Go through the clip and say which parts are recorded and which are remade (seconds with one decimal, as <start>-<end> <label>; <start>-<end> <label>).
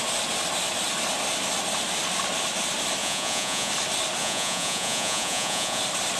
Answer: 0.0-3.0 recorded; 3.0-3.7 remade; 3.7-4.2 recorded; 4.2-5.8 remade; 5.8-6.2 recorded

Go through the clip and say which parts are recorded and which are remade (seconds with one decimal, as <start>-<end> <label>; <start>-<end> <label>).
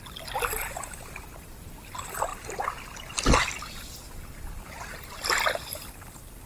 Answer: 0.0-6.5 recorded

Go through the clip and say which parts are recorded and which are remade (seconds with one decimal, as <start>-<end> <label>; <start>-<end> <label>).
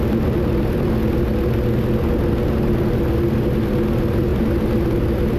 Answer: 0.0-5.4 recorded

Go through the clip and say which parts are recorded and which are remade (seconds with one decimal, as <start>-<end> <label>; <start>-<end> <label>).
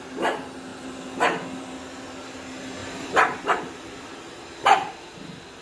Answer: 0.0-2.8 recorded; 2.8-5.1 remade; 5.1-5.6 recorded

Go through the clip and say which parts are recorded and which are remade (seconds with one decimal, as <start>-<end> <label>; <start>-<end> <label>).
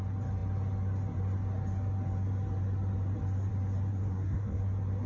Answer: 0.0-3.9 recorded; 3.9-4.6 remade; 4.6-5.1 recorded